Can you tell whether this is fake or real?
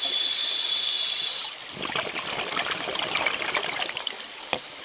real